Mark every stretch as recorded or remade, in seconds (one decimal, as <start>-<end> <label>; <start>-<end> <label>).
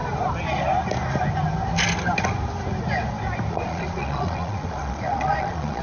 0.0-3.5 recorded; 3.5-5.8 remade